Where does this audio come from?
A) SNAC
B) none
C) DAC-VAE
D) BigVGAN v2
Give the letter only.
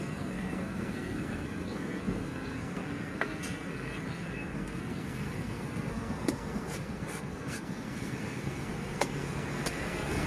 A